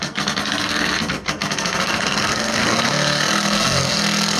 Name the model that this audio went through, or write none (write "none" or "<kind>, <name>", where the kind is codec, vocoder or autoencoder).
codec, SNAC